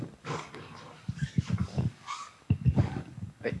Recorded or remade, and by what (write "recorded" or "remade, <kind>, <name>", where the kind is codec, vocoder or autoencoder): remade, codec, DAC